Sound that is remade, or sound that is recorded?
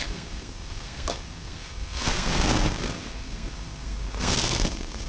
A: remade